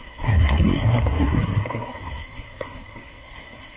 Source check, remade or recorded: remade